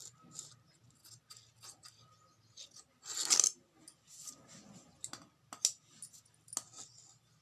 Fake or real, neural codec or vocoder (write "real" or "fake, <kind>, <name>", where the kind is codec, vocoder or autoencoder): real